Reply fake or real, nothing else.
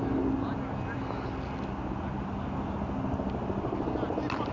real